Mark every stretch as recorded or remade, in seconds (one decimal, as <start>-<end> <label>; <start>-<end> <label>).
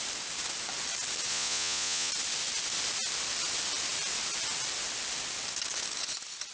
0.0-1.3 recorded; 1.3-2.1 remade; 2.1-6.5 recorded